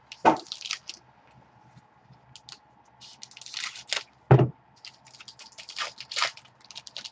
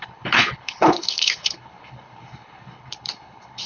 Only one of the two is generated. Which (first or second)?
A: second